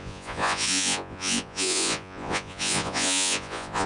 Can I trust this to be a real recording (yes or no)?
no